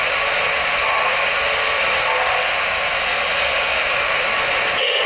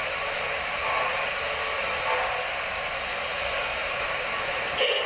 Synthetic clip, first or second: second